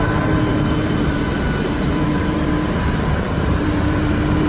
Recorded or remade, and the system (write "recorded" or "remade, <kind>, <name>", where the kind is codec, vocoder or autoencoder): remade, vocoder, BigVGAN v2